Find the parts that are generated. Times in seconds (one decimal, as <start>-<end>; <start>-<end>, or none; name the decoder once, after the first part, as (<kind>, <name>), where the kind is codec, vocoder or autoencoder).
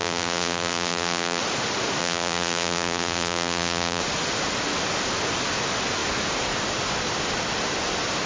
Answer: 0.0-1.4 (vocoder, BigVGAN v2); 2.0-4.0